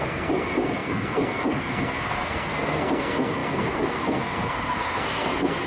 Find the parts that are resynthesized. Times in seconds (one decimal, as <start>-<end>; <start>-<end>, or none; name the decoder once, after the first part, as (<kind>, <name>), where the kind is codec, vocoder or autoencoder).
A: 0.0-5.7 (codec, SNAC)